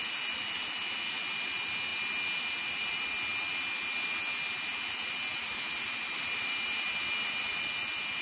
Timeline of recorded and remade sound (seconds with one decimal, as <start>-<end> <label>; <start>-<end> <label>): 0.0-5.3 recorded; 5.3-7.6 remade; 7.6-8.2 recorded